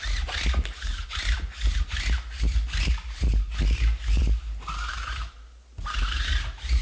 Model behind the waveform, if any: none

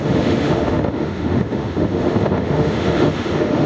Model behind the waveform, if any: autoencoder, DAC-VAE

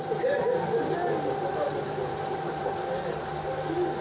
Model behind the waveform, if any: none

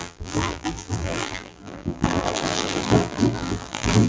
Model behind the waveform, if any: vocoder, BigVGAN v2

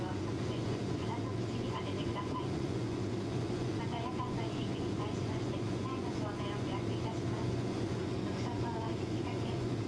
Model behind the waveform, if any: vocoder, Vocos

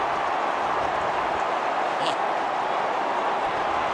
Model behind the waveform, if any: none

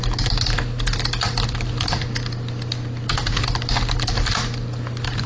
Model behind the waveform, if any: none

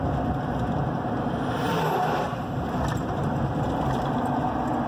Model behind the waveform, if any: none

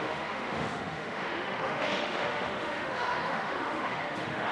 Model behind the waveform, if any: autoencoder, DAC-VAE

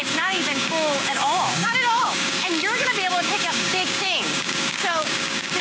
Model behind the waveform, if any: codec, DAC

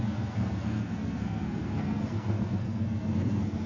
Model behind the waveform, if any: codec, SNAC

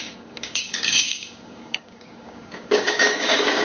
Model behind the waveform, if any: codec, DAC